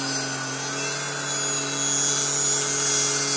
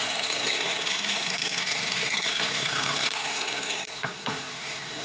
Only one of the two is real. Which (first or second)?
first